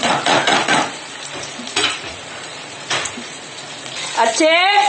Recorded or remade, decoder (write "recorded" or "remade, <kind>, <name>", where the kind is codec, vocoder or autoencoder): remade, vocoder, Vocos